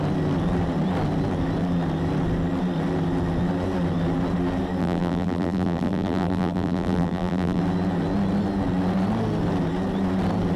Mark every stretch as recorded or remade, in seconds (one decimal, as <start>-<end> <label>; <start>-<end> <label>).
0.0-4.8 recorded; 4.8-7.6 remade; 7.6-10.6 recorded